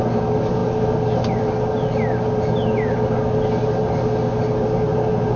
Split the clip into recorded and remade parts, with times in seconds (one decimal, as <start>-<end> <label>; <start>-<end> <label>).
0.0-5.4 recorded